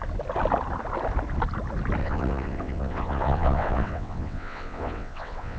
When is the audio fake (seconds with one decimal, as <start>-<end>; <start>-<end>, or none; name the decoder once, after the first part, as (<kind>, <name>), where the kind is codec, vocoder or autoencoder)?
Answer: 2.0-5.6 (vocoder, WaveNeXt)